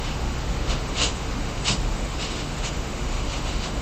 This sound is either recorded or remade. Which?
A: remade